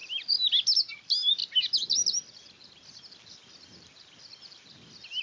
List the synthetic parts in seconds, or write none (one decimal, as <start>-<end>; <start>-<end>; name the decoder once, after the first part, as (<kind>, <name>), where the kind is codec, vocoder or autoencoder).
none